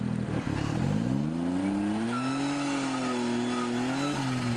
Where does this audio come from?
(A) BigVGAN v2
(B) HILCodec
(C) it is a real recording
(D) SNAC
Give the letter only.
C